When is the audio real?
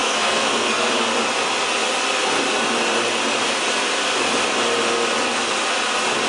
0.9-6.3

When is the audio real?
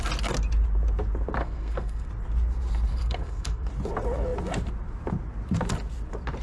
0.0-1.4; 2.1-2.9; 3.7-6.4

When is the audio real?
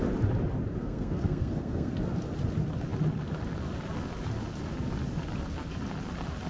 0.0-0.8; 1.9-6.5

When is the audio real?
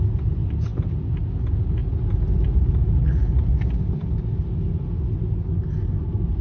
0.0-6.4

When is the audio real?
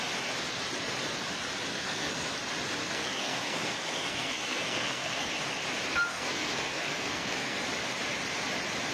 0.0-1.7; 2.3-2.8; 5.3-6.1; 7.6-8.9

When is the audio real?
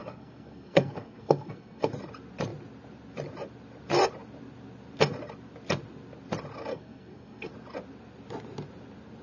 1.9-6.7; 7.5-9.2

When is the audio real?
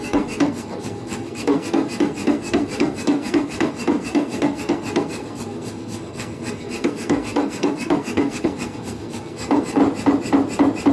9.8-10.9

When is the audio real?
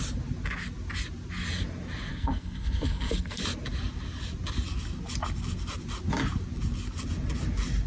0.0-2.1; 3.4-7.9